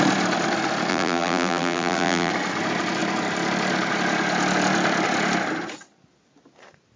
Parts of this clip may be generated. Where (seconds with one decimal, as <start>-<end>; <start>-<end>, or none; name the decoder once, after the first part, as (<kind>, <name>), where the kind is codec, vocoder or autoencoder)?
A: 0.9-2.3 (vocoder, BigVGAN v2)